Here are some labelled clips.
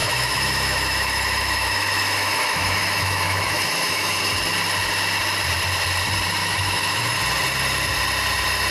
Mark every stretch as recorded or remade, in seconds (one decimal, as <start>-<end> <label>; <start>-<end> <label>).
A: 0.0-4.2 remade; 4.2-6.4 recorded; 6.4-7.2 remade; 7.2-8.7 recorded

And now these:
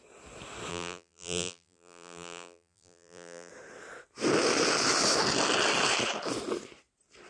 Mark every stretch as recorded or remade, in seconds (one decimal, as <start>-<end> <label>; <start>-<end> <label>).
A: 0.0-0.7 recorded; 0.7-3.5 remade; 3.5-7.3 recorded

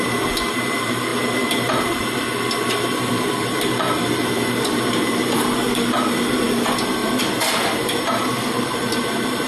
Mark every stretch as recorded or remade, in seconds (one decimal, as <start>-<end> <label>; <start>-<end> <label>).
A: 0.0-7.0 remade; 7.0-7.5 recorded; 7.5-9.5 remade